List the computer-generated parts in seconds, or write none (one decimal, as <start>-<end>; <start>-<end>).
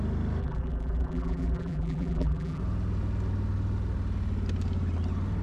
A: 0.4-2.6